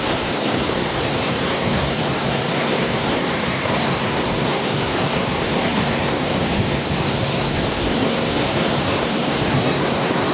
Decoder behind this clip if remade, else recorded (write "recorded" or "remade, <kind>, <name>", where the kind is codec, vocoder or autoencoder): remade, codec, SNAC